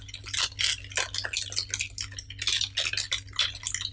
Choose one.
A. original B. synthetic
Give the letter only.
A